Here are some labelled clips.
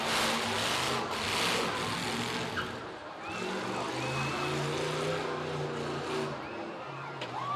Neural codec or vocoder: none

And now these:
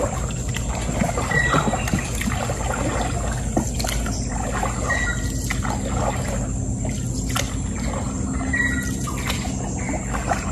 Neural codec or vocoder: none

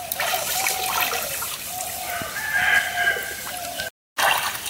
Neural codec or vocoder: none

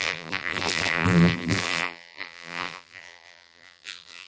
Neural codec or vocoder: vocoder, BigVGAN v2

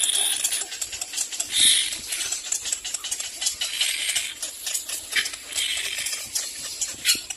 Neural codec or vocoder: vocoder, BigVGAN v2